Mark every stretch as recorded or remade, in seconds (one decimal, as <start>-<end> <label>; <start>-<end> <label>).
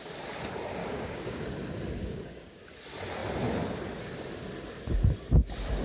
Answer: 0.0-0.8 recorded; 0.8-1.4 remade; 1.4-2.0 recorded; 2.0-2.6 remade; 2.6-5.8 recorded